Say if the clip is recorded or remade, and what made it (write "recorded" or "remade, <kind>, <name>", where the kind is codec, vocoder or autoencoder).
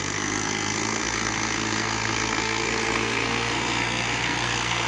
remade, codec, SNAC